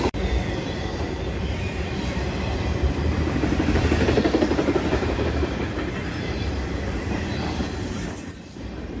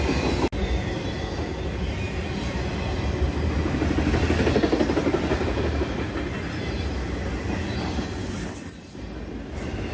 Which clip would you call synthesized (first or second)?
first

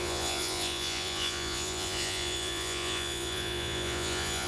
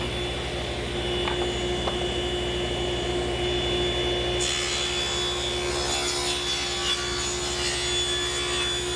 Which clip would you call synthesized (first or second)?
first